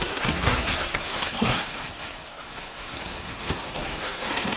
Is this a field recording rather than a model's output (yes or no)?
no